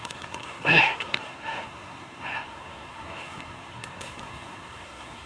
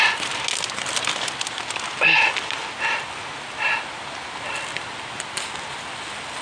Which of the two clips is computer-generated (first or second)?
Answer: first